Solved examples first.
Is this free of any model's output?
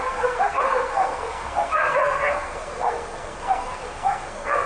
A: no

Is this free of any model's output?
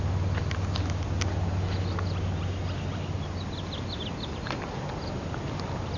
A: yes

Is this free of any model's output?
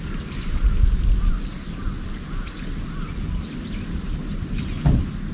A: yes